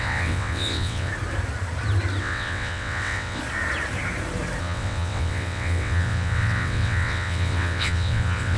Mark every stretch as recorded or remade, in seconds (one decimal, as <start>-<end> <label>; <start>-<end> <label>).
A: 0.0-1.1 remade; 1.1-2.2 recorded; 2.2-3.4 remade; 3.4-4.6 recorded; 4.6-8.6 remade

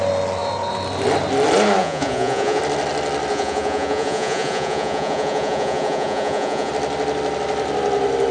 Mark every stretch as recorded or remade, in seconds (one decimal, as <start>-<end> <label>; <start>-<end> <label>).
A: 0.0-1.8 recorded; 1.8-2.6 remade; 2.6-3.3 recorded; 3.3-6.7 remade; 6.7-8.3 recorded

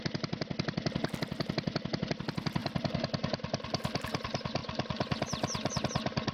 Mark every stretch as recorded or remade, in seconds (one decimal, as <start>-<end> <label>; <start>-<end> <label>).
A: 0.0-2.6 recorded; 2.6-4.0 remade; 4.0-4.6 recorded; 4.6-5.8 remade; 5.8-6.3 recorded

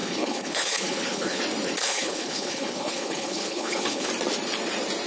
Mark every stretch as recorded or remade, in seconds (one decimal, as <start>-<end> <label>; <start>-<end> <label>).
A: 0.0-1.4 remade; 1.4-1.8 recorded; 1.8-4.1 remade; 4.1-5.1 recorded

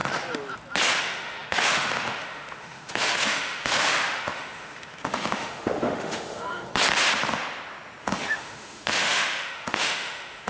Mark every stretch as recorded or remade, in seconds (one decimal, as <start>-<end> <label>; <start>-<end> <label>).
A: 0.0-1.0 recorded; 1.0-6.7 remade; 6.7-8.0 recorded; 8.0-10.5 remade

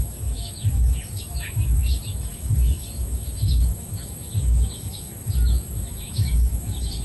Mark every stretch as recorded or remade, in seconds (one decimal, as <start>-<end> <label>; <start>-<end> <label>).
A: 0.0-7.0 remade